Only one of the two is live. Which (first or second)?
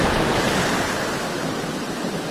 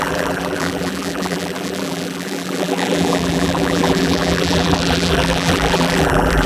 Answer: first